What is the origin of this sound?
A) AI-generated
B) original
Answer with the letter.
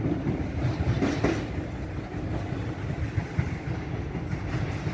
B